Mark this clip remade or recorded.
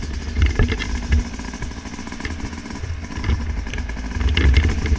recorded